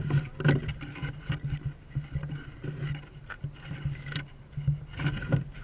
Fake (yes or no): no